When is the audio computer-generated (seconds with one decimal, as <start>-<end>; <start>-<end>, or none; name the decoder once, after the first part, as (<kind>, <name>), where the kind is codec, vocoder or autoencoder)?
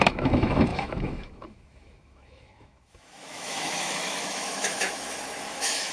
0.0-5.9 (autoencoder, DAC-VAE)